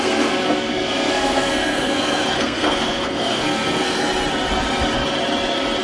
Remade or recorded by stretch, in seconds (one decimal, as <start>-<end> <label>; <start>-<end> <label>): 0.0-4.0 remade; 4.0-5.8 recorded

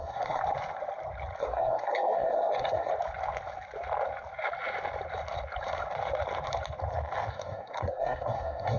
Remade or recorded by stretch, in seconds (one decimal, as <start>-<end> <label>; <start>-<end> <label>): 0.0-0.4 remade; 0.4-1.4 recorded; 1.4-2.9 remade; 2.9-7.3 recorded; 7.3-8.8 remade